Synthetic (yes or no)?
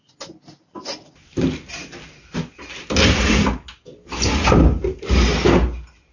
no